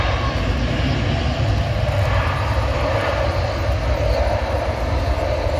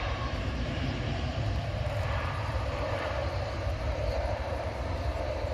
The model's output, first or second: second